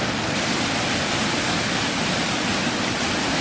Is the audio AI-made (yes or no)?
no